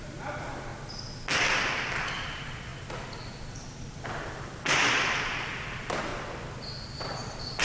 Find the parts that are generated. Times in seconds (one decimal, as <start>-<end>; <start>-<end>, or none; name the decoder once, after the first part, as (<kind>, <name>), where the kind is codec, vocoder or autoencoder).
0.0-0.7 (vocoder, BigVGAN v2); 2.2-2.7; 3.7-6.1; 6.9-7.6